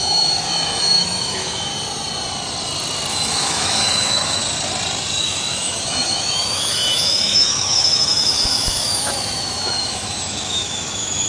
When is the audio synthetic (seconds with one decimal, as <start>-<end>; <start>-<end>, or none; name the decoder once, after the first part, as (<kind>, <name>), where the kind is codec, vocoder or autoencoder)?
0.0-1.7 (autoencoder, DAC-VAE); 3.1-4.4; 5.2-11.3